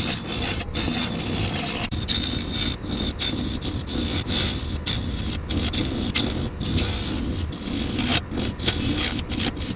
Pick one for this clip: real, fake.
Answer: real